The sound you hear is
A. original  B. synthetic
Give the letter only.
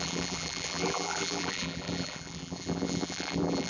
B